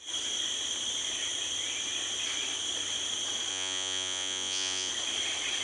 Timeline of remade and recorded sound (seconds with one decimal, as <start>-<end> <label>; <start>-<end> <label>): 0.0-3.5 recorded; 3.5-4.9 remade; 4.9-5.6 recorded

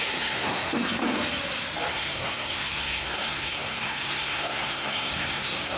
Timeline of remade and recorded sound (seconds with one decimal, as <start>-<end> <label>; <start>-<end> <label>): 0.0-1.0 remade; 1.0-1.9 recorded; 1.9-5.8 remade

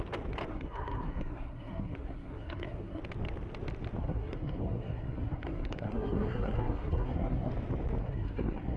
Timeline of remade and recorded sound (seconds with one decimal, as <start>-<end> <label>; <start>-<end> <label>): 0.0-0.5 recorded; 0.5-3.0 remade; 3.0-4.0 recorded; 4.0-7.5 remade; 7.5-8.0 recorded; 8.0-8.8 remade

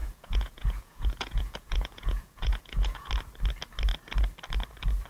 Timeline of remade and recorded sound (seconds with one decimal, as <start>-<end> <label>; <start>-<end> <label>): 0.0-3.1 remade; 3.1-5.1 recorded

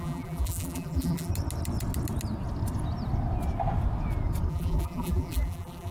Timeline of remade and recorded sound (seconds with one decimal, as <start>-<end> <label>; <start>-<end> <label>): 0.0-1.3 remade; 1.3-4.5 recorded; 4.5-5.9 remade

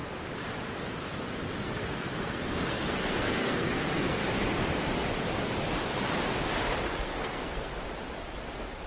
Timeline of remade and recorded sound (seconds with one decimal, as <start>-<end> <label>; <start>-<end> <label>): 0.0-1.6 recorded; 1.6-4.2 remade; 4.2-6.9 recorded; 6.9-7.7 remade; 7.7-8.9 recorded